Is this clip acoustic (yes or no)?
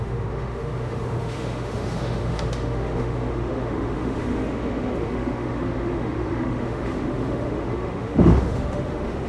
no